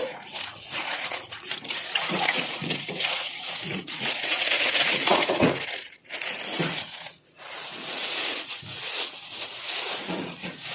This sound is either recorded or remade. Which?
remade